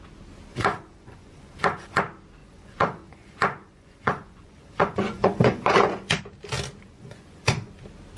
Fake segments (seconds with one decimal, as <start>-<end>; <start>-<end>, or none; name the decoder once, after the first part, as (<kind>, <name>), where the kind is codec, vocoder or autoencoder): 0.5-2.0 (vocoder, Vocos); 2.4-6.2; 6.9-7.7